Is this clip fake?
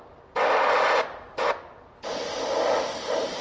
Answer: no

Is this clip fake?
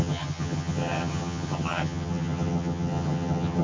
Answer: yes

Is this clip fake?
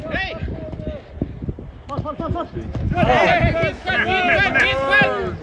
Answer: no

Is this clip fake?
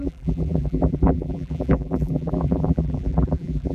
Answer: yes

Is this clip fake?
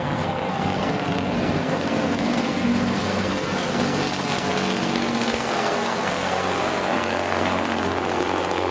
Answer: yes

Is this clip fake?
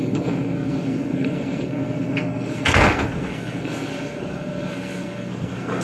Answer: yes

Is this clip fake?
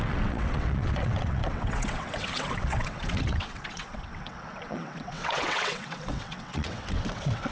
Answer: yes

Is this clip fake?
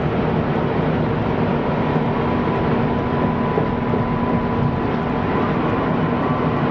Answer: no